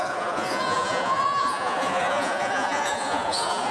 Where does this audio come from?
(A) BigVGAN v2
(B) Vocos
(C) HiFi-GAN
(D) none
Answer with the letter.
B